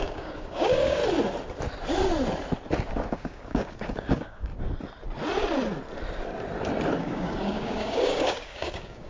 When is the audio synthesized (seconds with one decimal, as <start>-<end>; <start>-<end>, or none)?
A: 0.0-1.0; 2.9-4.5; 7.0-9.1